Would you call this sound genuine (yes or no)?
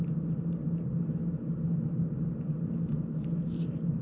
yes